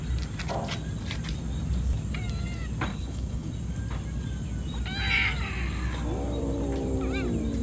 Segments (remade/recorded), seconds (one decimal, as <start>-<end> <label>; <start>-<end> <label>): 0.0-2.9 recorded; 2.9-3.5 remade; 3.5-7.6 recorded